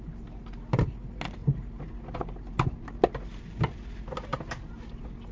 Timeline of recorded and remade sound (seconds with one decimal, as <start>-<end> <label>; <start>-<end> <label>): 0.0-5.3 recorded